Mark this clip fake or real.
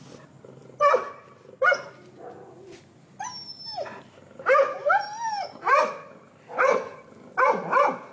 real